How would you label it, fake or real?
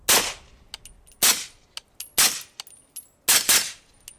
real